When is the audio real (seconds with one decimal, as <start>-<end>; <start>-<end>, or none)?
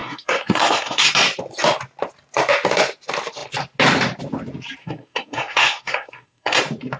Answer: 1.1-4.8; 6.6-7.0